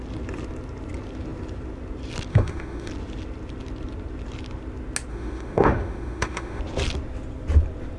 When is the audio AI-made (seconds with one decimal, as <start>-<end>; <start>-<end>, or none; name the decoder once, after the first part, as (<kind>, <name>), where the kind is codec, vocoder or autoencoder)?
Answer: 2.3-2.9 (autoencoder, DAC-VAE); 5.1-6.6